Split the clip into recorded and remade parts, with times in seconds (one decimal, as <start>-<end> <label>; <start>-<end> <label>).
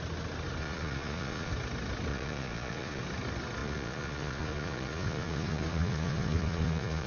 0.0-0.6 recorded; 0.6-1.5 remade; 1.5-2.1 recorded; 2.1-3.0 remade; 3.0-3.6 recorded; 3.6-7.1 remade